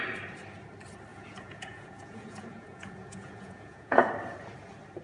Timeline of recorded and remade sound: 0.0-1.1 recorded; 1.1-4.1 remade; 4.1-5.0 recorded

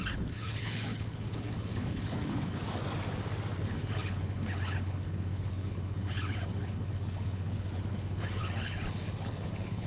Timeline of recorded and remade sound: 0.0-2.6 remade; 2.6-3.6 recorded; 3.6-9.9 remade